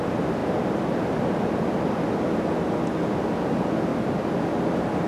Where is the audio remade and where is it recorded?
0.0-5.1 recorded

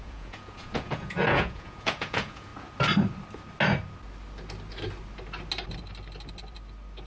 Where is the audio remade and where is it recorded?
0.0-2.5 remade; 2.5-7.1 recorded

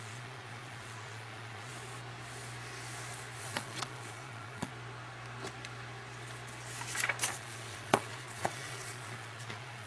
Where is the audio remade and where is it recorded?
0.0-1.7 remade; 1.7-3.4 recorded; 3.4-4.7 remade; 4.7-7.3 recorded; 7.3-9.9 remade

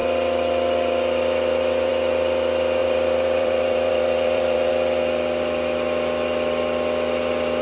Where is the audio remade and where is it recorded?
0.0-2.8 recorded; 2.8-4.7 remade; 4.7-7.6 recorded

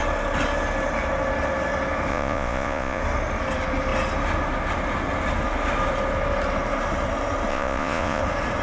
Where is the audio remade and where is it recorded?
0.0-2.1 recorded; 2.1-3.0 remade; 3.0-7.5 recorded; 7.5-8.2 remade; 8.2-8.6 recorded

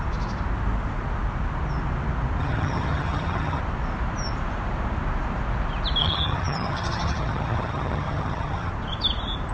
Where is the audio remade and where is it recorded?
0.0-2.4 recorded; 2.4-3.6 remade; 3.6-6.0 recorded; 6.0-8.7 remade; 8.7-9.5 recorded

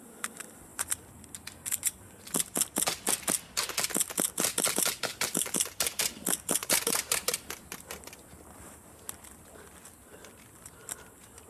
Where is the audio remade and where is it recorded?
0.0-6.6 recorded; 6.6-7.5 remade; 7.5-11.5 recorded

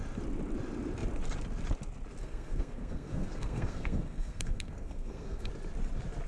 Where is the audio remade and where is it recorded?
0.0-2.2 recorded; 2.2-5.5 remade; 5.5-6.3 recorded